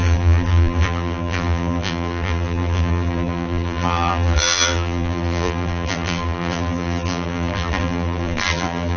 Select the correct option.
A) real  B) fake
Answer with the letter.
B